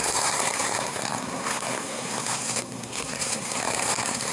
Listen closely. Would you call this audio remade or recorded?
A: remade